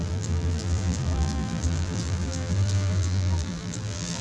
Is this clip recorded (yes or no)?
no